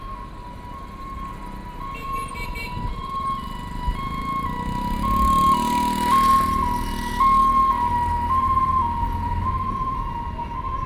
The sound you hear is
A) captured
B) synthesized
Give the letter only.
A